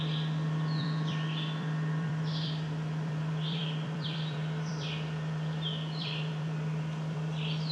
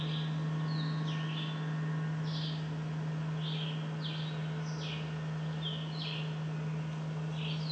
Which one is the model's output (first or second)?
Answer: first